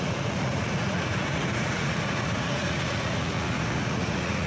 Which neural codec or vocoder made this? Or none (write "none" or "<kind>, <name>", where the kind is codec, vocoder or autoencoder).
vocoder, Vocos